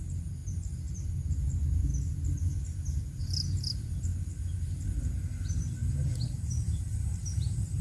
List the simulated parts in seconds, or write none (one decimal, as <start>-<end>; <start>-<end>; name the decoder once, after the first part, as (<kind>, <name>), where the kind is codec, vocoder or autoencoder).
0.0-1.9 (vocoder, BigVGAN v2); 3.2-4.1; 5.0-7.8